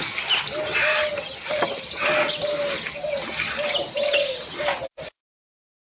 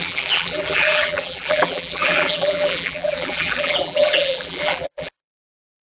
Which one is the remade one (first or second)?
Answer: second